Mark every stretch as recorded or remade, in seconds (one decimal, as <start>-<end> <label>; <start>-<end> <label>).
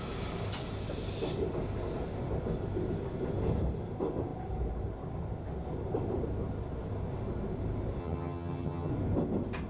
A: 0.0-8.0 recorded; 8.0-8.9 remade; 8.9-9.7 recorded